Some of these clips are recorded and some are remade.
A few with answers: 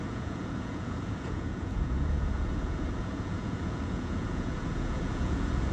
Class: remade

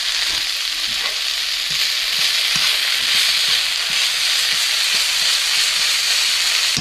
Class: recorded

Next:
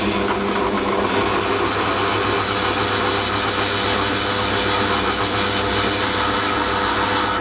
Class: recorded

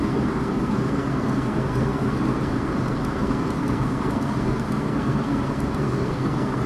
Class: remade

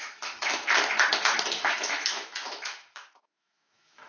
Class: remade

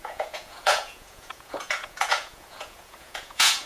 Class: remade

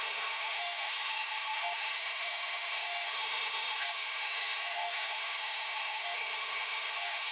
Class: remade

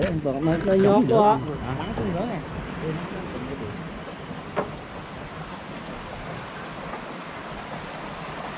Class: recorded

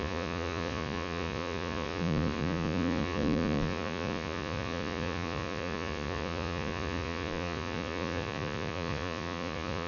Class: remade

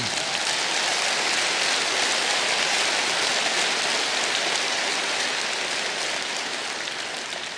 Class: recorded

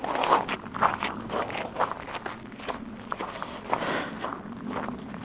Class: recorded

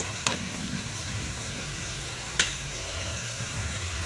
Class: remade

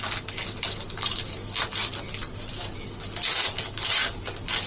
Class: recorded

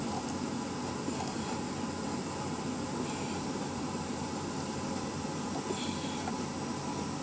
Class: recorded